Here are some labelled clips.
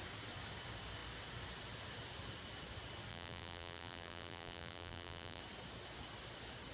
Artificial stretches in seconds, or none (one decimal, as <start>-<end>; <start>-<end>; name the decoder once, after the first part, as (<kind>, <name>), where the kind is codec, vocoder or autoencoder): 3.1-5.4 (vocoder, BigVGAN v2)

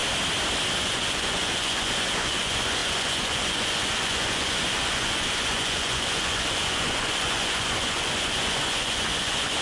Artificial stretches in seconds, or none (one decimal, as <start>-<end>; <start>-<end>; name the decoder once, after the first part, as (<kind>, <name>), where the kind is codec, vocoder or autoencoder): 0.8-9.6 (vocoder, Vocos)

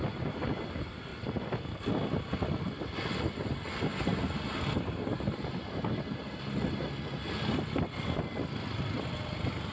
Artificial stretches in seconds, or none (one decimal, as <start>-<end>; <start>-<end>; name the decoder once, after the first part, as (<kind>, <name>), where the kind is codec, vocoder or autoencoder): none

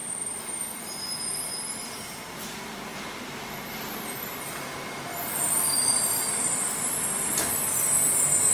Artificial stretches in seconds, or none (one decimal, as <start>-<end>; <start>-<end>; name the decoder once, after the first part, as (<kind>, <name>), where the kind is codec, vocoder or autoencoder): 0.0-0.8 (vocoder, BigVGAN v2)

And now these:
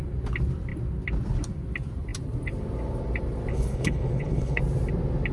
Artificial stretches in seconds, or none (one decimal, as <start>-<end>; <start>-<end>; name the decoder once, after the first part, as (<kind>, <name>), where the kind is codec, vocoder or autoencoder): 3.5-4.6 (codec, HILCodec)

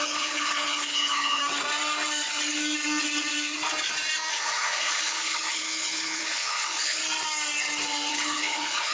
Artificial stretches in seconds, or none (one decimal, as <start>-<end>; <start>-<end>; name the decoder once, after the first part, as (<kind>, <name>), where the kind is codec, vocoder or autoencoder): 0.0-1.4 (codec, HILCodec); 4.3-7.0; 8.1-8.9